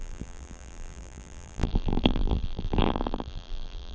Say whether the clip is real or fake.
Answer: fake